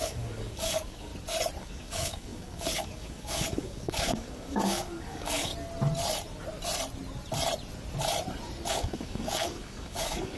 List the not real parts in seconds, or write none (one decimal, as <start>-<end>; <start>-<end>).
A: 0.0-1.1; 1.6-5.5; 8.7-10.4